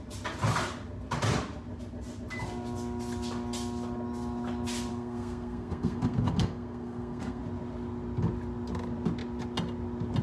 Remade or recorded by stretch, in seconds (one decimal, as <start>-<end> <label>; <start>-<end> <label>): 0.0-4.9 recorded; 4.9-7.4 remade; 7.4-10.2 recorded